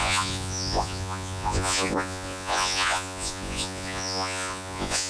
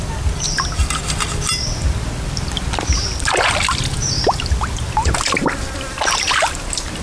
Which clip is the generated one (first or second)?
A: first